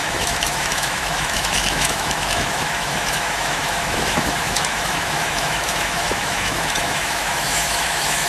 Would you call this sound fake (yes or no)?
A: yes